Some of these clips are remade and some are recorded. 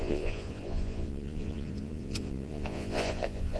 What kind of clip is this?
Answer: remade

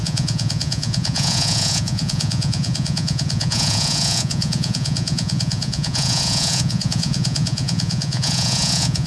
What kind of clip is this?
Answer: remade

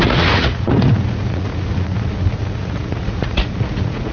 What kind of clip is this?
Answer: remade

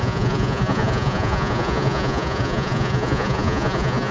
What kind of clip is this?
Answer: remade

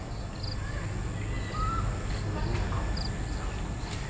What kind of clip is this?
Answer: recorded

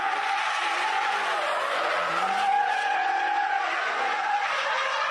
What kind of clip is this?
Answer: remade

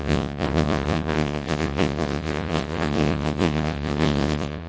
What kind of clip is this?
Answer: remade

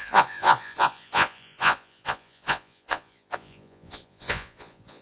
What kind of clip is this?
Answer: remade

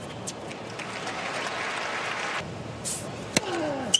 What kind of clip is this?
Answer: recorded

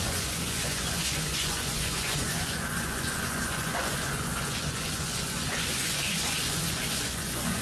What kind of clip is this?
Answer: remade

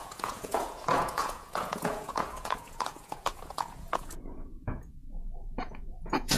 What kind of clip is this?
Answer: remade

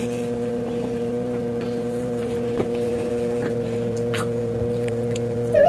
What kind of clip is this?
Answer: remade